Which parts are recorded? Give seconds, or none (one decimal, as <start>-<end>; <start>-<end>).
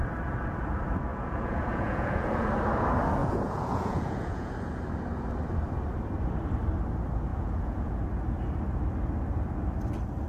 0.0-1.1; 2.5-3.2; 4.5-7.3; 7.9-10.3